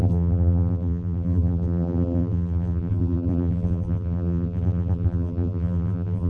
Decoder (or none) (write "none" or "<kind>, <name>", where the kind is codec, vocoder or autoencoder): vocoder, BigVGAN v2